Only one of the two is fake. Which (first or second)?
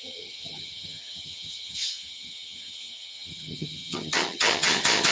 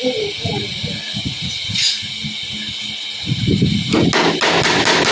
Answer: first